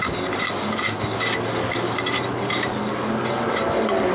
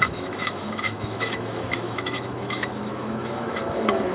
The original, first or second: first